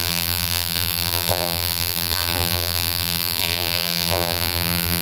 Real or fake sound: fake